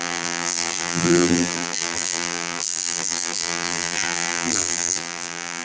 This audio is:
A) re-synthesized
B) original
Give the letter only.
A